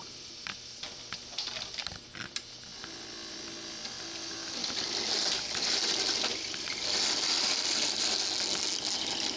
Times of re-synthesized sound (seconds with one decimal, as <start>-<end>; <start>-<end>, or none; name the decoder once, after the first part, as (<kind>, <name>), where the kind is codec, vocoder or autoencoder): 2.7-3.5 (vocoder, BigVGAN v2); 4.6-8.2